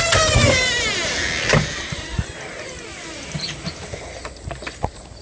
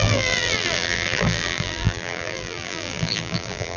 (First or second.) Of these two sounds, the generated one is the second